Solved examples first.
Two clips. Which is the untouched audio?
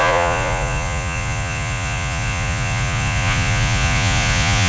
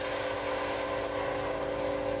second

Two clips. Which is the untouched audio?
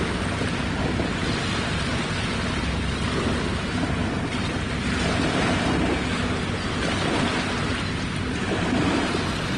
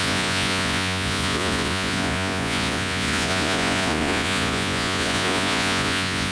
first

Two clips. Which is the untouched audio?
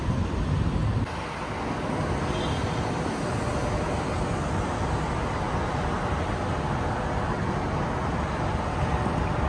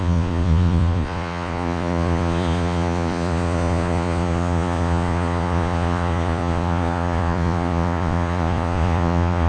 first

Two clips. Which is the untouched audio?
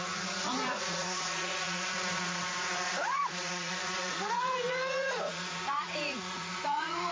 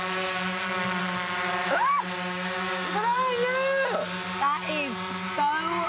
second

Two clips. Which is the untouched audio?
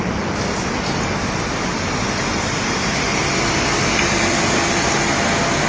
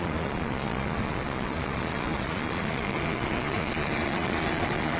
first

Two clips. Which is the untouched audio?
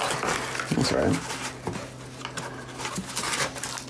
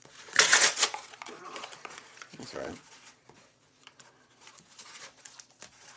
first